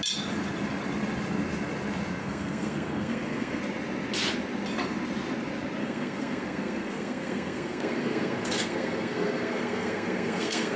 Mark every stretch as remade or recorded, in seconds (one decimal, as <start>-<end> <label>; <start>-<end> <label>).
0.0-2.2 recorded; 2.2-3.6 remade; 3.6-5.8 recorded; 5.8-10.8 remade